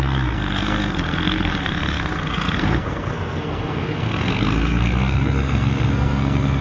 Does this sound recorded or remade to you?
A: remade